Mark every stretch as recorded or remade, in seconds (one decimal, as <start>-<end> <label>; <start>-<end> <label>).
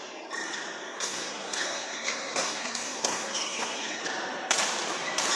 0.0-0.8 recorded; 0.8-4.0 remade; 4.0-5.4 recorded